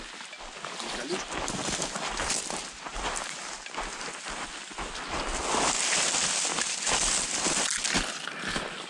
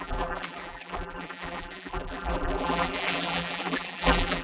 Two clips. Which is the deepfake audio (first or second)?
second